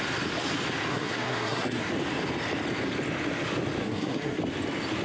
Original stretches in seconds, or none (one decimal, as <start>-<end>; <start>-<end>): 0.0-0.9; 1.9-3.8; 4.4-5.0